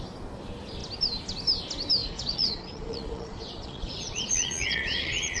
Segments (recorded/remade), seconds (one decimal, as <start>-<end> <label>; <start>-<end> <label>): 0.0-2.0 recorded; 2.0-5.4 remade